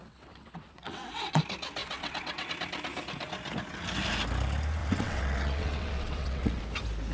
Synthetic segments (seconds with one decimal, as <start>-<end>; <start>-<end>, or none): 0.0-1.4; 1.8-2.5; 4.8-6.6